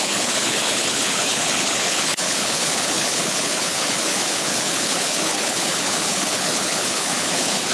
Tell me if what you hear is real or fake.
fake